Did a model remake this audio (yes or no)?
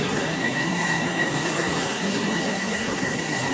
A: yes